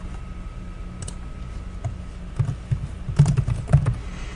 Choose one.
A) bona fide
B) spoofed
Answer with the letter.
A